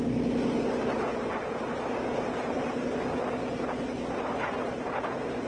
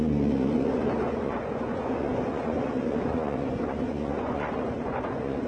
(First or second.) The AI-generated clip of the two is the second